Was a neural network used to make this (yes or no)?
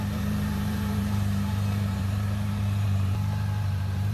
yes